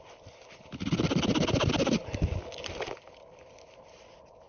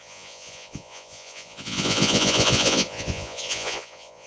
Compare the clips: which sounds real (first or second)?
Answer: first